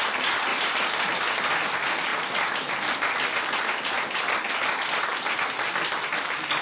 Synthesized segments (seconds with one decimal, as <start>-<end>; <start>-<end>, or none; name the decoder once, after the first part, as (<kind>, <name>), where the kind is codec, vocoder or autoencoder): none